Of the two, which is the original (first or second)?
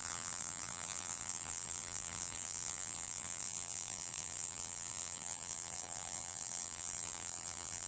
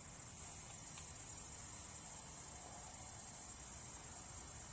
second